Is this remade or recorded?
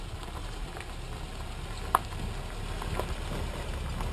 recorded